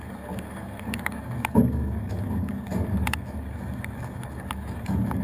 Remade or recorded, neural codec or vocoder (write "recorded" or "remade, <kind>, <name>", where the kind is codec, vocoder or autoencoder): remade, codec, DAC